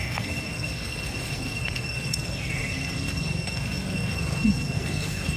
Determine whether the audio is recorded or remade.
remade